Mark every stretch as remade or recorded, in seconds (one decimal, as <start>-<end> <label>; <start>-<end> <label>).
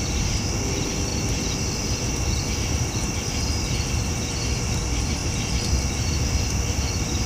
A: 0.0-1.1 recorded; 1.1-3.9 remade; 3.9-5.2 recorded; 5.2-5.9 remade; 5.9-7.3 recorded